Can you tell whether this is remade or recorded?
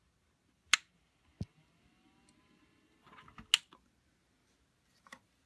recorded